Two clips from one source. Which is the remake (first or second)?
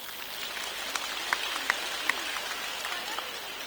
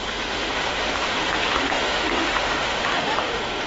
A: second